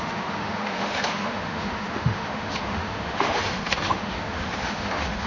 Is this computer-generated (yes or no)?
yes